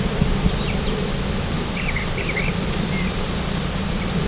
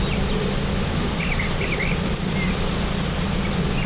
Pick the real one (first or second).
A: second